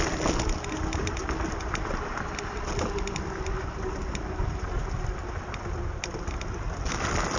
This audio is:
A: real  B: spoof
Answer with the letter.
A